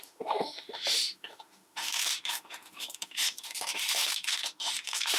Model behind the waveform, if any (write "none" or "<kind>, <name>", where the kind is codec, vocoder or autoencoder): autoencoder, DAC-VAE